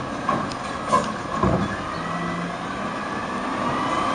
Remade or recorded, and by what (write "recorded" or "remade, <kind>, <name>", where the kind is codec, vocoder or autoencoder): recorded